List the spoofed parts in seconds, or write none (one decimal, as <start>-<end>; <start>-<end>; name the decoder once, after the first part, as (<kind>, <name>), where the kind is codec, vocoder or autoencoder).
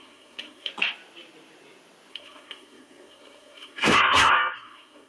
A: 0.0-0.7 (codec, SNAC); 2.1-5.1